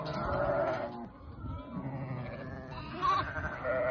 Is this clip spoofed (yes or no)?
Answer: no